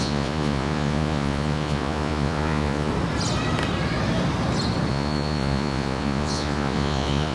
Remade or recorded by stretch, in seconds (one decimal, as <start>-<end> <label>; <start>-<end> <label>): 0.0-2.9 remade; 2.9-4.9 recorded; 4.9-7.3 remade